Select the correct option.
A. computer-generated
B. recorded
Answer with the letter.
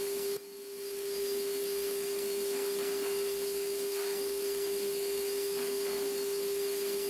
A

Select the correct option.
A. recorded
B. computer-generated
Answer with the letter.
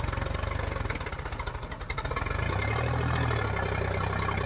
A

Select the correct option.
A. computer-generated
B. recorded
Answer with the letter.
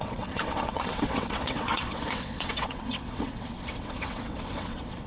A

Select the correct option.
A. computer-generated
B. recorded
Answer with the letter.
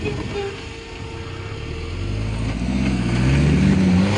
B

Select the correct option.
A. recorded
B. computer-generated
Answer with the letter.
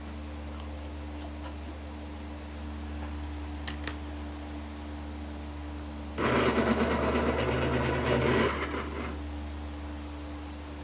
A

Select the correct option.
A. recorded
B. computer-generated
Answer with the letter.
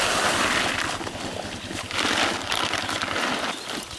A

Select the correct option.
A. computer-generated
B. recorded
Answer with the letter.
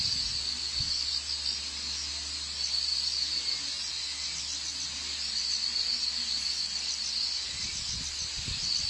B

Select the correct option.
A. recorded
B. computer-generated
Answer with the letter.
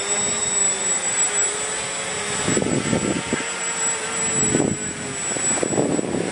A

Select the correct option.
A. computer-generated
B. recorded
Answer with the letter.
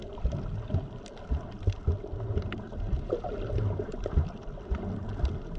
B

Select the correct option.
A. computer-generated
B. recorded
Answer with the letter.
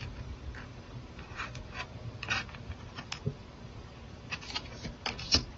A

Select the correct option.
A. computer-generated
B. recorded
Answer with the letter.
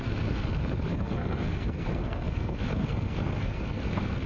A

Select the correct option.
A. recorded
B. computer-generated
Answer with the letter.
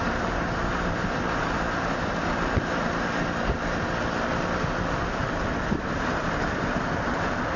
B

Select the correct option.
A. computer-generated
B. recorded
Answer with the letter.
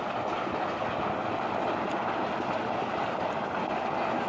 B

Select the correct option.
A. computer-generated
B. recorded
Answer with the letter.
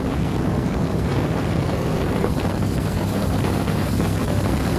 A